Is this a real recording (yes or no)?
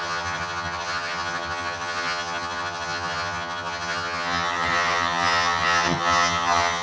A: no